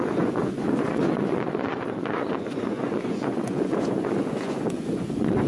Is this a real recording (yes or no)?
no